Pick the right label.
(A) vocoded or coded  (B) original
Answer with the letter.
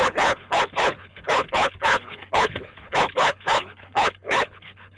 A